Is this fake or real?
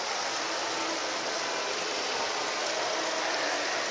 real